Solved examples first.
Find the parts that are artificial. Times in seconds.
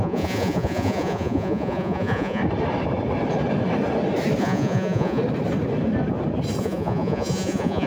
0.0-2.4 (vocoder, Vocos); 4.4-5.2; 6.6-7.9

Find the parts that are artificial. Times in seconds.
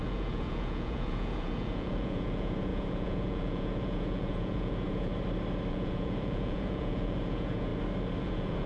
0.0-5.1 (vocoder, Vocos); 5.7-7.7; 8.2-8.7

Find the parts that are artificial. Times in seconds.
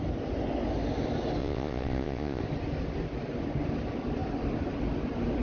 1.4-2.4 (vocoder, Vocos)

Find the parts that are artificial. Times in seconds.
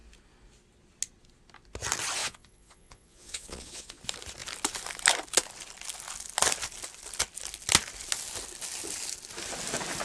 2.2-4.0 (vocoder, Vocos)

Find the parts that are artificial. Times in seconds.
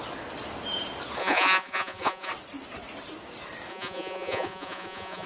1.2-2.3 (vocoder, Vocos); 3.7-5.3